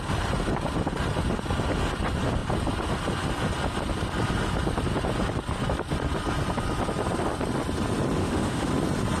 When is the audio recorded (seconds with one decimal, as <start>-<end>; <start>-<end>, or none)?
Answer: 0.0-8.2; 8.7-9.2